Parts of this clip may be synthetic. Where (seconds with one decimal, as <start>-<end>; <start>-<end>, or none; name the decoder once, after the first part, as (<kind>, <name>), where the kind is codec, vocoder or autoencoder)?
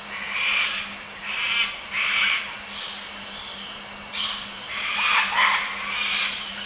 none